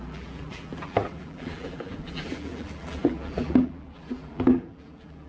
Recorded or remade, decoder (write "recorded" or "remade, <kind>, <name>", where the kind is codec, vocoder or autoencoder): remade, vocoder, BigVGAN v2